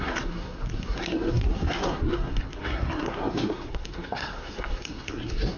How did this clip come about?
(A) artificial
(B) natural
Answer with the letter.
A